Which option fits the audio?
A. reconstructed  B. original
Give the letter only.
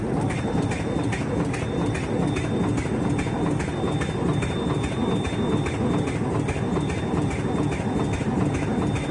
B